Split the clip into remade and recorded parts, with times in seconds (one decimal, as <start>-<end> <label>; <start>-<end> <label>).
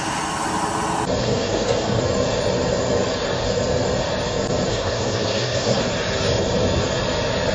0.0-1.2 recorded; 1.2-2.0 remade; 2.0-4.7 recorded; 4.7-5.8 remade; 5.8-7.5 recorded